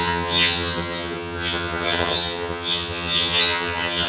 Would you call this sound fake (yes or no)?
yes